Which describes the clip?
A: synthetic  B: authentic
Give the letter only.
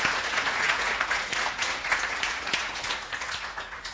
A